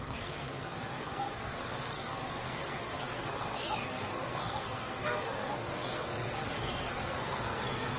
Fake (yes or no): yes